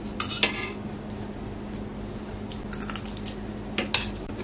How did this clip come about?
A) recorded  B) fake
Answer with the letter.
A